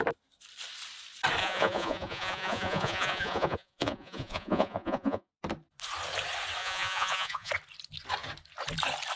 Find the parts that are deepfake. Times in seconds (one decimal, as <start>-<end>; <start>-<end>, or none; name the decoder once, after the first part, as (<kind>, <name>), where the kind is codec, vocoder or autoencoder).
1.4-5.3 (vocoder, Vocos); 6.6-7.5